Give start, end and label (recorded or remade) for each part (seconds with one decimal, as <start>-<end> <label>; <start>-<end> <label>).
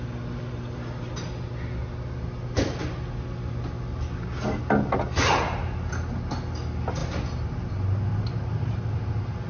0.0-9.5 recorded